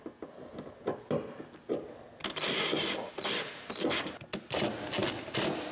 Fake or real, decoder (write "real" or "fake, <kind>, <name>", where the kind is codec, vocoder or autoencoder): real